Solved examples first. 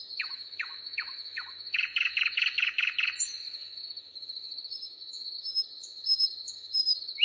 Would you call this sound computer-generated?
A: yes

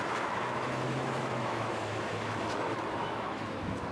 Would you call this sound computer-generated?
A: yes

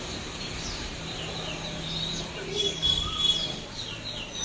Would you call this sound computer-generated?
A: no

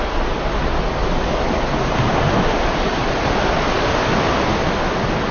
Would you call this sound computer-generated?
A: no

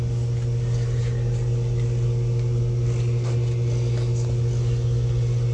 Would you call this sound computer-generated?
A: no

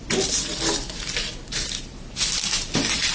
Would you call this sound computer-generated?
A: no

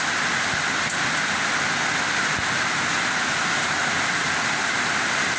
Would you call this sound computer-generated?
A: no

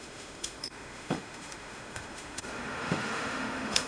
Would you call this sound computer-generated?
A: yes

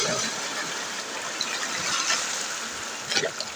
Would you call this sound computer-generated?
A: no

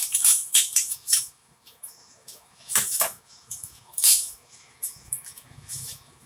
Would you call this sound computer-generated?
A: yes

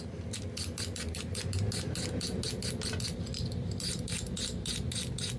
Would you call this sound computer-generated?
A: no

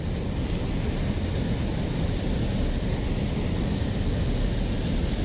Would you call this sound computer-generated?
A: no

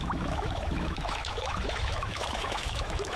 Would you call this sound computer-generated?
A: yes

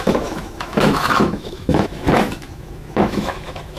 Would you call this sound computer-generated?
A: yes